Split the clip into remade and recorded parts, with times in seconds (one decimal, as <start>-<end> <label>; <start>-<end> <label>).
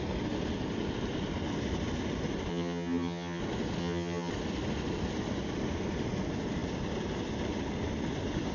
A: 0.0-2.5 recorded; 2.5-3.4 remade; 3.4-3.8 recorded; 3.8-4.3 remade; 4.3-8.5 recorded